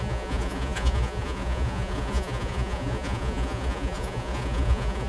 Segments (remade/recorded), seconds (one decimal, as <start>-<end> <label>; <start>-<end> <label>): 0.0-5.1 remade